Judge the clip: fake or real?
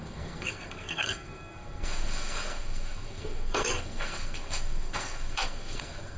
fake